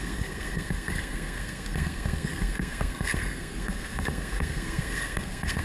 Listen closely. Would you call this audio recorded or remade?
remade